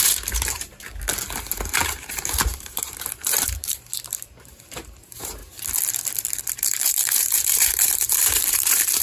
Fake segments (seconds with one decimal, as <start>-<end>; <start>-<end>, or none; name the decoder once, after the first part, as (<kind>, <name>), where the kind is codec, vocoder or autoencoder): 0.0-0.9 (vocoder, BigVGAN v2); 2.5-5.4; 6.4-9.0